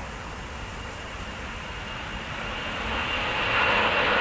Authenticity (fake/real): real